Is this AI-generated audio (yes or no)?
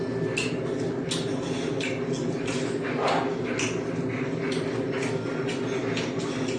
no